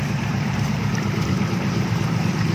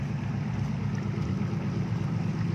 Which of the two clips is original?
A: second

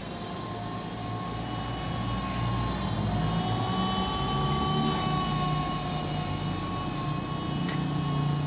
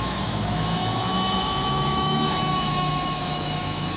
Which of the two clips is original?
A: first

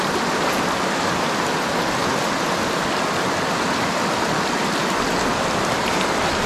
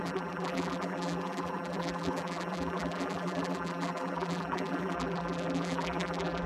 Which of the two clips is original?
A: first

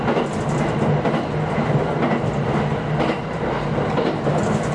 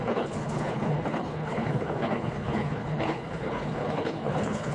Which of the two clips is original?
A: first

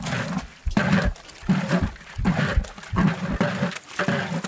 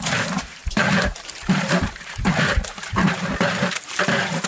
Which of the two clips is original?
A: first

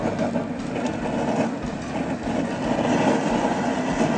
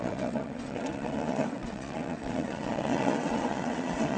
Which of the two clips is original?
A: first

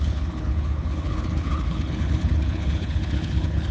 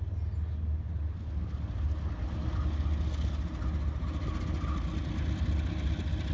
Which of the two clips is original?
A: second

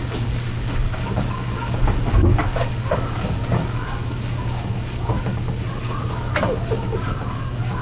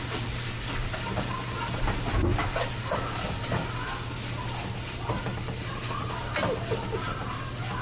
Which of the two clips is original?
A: second